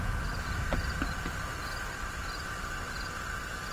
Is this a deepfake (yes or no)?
no